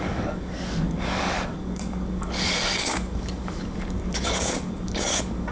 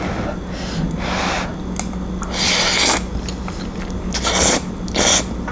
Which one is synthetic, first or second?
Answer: first